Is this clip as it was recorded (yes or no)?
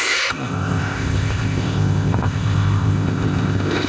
no